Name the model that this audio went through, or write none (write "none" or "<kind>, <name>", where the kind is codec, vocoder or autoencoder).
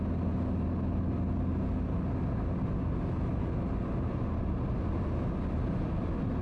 none